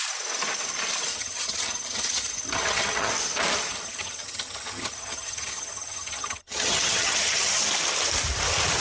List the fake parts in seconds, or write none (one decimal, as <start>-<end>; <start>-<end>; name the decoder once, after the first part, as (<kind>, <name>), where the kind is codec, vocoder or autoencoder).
1.1-3.1 (vocoder, HiFi-GAN); 3.7-7.6